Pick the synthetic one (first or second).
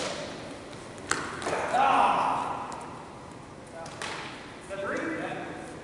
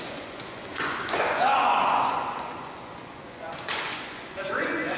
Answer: second